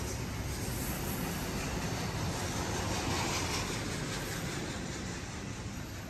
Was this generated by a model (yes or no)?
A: no